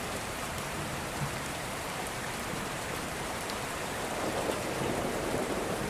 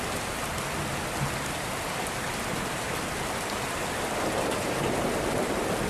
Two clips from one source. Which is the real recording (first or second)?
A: second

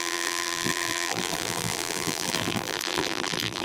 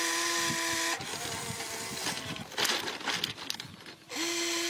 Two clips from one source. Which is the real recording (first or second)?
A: second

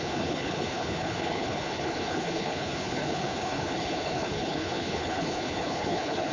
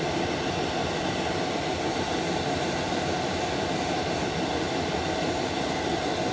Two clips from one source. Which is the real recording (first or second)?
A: second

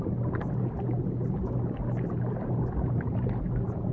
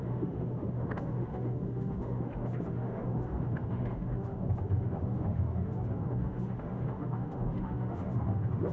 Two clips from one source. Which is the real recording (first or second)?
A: first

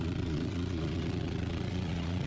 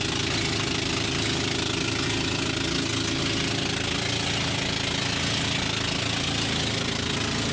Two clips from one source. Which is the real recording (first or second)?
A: second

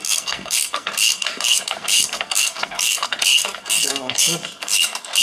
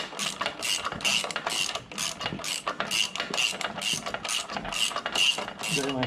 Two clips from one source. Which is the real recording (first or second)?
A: second